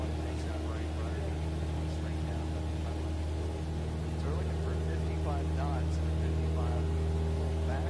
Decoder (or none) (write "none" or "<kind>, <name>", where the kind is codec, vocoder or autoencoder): none